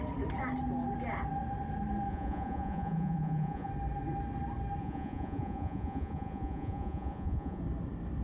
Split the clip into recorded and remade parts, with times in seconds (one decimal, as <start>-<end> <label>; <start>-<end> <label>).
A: 0.0-2.1 recorded; 2.1-3.7 remade; 3.7-4.8 recorded; 4.8-7.6 remade; 7.6-8.2 recorded